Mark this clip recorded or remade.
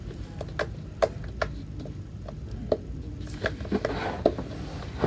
recorded